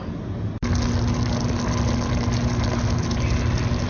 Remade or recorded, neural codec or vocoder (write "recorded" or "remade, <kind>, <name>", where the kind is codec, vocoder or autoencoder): recorded